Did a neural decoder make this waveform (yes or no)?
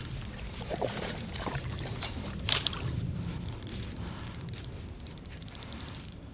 yes